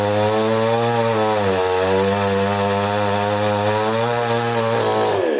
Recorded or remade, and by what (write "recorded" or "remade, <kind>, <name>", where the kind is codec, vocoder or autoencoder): recorded